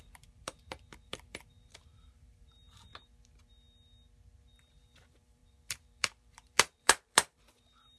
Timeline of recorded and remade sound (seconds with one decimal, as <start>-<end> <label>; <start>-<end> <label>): 0.0-2.9 remade; 2.9-4.6 recorded; 4.6-8.0 remade